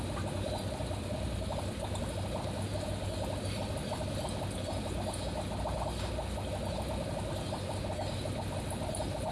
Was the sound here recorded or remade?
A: recorded